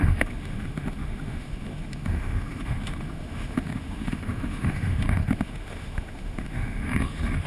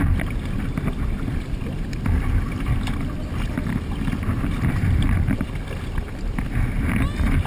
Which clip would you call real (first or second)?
second